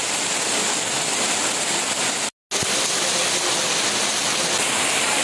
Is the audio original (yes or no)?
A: yes